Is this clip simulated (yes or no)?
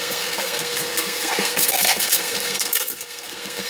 yes